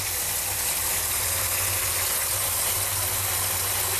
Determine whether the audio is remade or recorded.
recorded